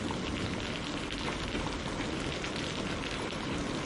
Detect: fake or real real